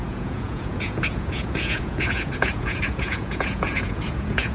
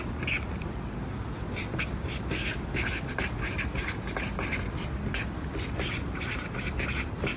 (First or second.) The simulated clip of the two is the first